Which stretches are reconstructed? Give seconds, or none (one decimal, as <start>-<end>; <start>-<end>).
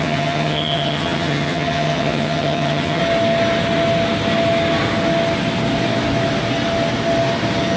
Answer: 0.0-3.0